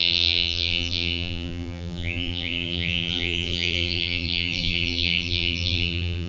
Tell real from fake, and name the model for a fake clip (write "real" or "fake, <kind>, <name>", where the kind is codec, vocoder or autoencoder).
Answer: fake, vocoder, BigVGAN v2